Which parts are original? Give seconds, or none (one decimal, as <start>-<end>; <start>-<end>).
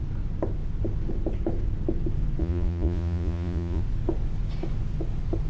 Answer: 0.0-2.4; 3.8-5.5